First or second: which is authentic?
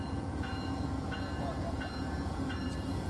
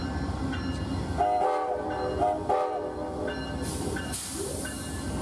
second